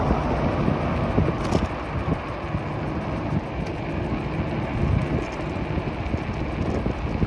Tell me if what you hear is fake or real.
real